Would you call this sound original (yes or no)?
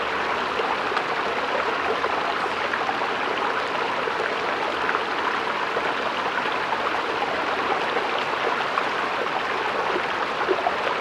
yes